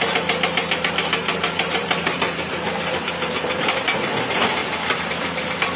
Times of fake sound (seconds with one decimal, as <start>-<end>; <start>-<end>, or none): 1.2-2.8; 4.6-5.1